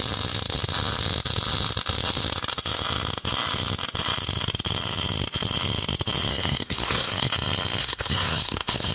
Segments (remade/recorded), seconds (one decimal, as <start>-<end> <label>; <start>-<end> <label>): 0.0-6.3 recorded; 6.3-7.3 remade; 7.3-7.8 recorded; 7.8-8.9 remade